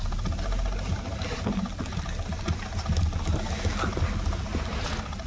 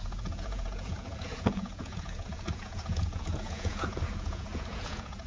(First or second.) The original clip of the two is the first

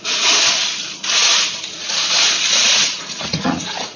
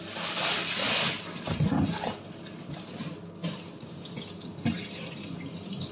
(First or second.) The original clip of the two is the second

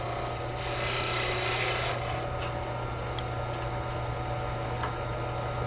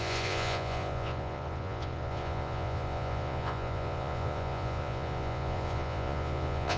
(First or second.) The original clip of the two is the first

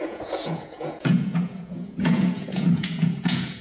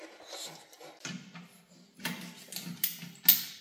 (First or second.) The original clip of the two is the second